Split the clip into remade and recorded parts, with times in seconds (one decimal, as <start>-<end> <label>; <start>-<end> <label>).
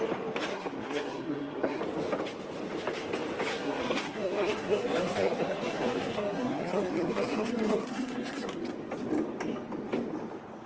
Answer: 0.0-0.5 recorded; 0.5-1.8 remade; 1.8-3.5 recorded; 3.5-8.6 remade; 8.6-10.7 recorded